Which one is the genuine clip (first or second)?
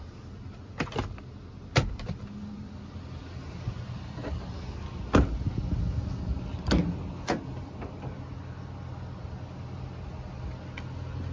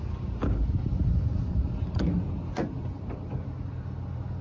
first